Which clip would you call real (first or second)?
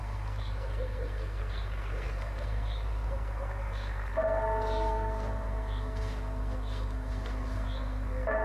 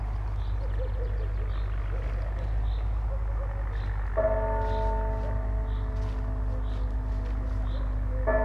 second